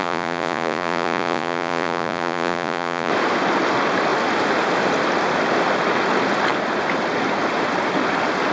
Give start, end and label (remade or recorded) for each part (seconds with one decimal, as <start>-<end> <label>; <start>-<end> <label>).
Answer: 0.0-3.1 remade; 3.1-8.5 recorded